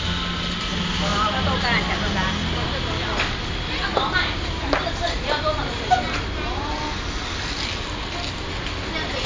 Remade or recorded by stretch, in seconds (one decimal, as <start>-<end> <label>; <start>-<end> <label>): 0.0-9.3 recorded